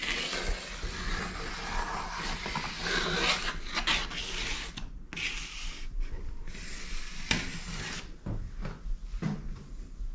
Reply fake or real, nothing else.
real